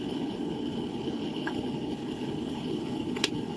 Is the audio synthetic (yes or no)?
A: yes